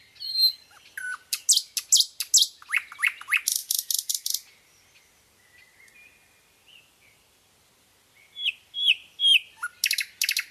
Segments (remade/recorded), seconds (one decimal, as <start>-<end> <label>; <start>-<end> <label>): 0.0-10.5 recorded